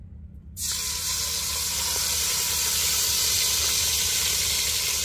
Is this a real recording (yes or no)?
yes